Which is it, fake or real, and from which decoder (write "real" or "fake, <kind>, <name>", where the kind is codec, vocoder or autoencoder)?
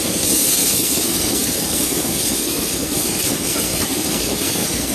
fake, codec, SNAC